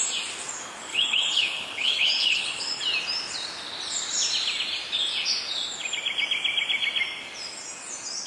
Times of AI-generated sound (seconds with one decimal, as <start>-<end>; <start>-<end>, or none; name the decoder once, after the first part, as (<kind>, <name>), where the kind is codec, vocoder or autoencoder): 0.9-2.8 (codec, HILCodec)